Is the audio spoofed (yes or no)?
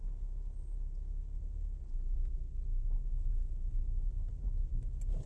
no